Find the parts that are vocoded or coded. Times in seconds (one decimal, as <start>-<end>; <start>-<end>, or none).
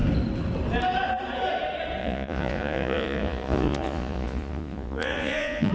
2.0-5.7